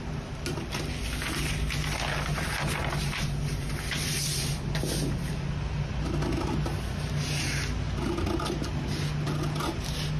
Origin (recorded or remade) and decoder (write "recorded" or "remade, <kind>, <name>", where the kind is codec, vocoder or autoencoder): recorded